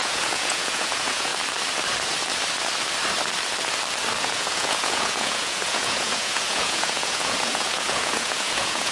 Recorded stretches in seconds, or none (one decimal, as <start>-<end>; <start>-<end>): 1.3-4.2